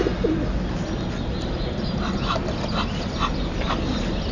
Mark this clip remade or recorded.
recorded